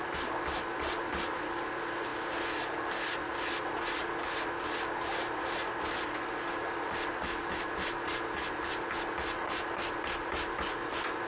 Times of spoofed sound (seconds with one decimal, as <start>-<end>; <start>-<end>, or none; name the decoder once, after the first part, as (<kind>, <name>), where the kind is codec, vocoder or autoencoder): none